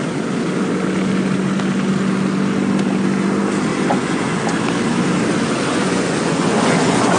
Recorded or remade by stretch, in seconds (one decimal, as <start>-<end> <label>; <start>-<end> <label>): 0.0-3.7 recorded; 3.7-4.4 remade; 4.4-5.7 recorded; 5.7-7.2 remade